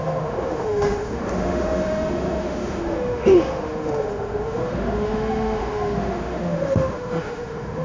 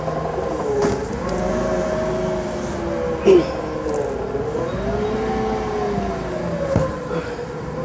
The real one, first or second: second